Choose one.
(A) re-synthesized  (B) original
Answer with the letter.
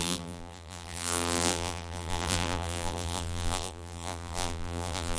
A